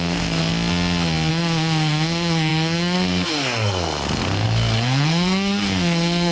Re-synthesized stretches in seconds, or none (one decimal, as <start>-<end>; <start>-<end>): 0.0-0.4; 1.3-6.3